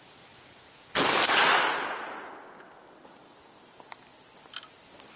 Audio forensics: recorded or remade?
recorded